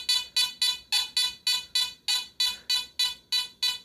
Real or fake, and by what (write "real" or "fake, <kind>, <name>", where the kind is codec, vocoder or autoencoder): real